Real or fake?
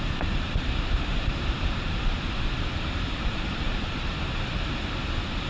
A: fake